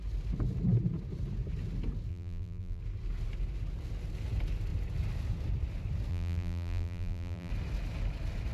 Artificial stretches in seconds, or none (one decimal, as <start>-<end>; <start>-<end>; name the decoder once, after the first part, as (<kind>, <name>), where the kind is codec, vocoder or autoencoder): 2.1-2.8 (vocoder, BigVGAN v2); 6.1-7.5